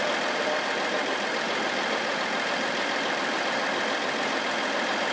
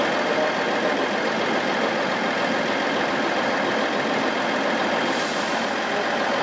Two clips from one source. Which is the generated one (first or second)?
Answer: first